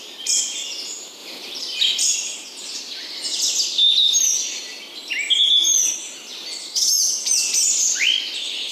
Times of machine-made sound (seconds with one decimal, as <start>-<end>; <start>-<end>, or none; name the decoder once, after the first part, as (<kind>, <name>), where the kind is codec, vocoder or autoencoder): none